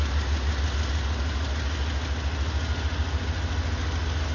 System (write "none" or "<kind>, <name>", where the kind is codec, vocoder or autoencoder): none